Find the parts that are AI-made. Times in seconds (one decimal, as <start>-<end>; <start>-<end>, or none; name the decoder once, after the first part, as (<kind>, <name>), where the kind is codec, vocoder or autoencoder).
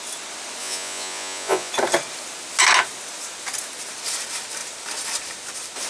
0.6-1.7 (vocoder, Vocos)